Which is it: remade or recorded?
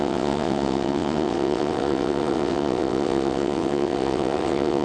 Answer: remade